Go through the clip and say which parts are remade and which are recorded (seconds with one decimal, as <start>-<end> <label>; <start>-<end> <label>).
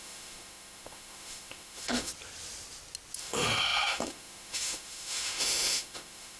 0.0-2.1 remade; 2.1-3.2 recorded; 3.2-6.4 remade